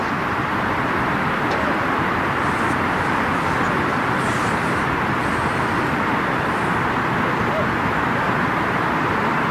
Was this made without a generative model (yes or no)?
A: yes